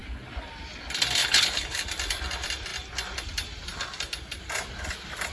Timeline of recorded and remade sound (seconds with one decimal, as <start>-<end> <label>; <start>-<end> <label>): 0.0-1.2 recorded; 1.2-1.8 remade; 1.8-5.3 recorded